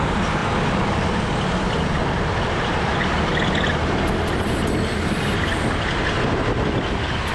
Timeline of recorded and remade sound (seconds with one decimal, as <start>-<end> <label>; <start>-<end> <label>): 0.0-0.4 remade; 0.4-2.4 recorded; 2.4-2.9 remade; 2.9-7.3 recorded